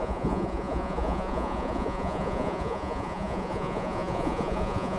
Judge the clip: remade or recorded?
remade